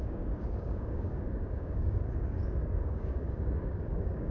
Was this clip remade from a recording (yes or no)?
yes